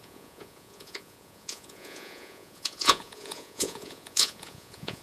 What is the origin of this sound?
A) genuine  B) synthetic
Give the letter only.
B